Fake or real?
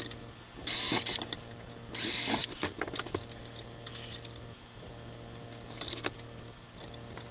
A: real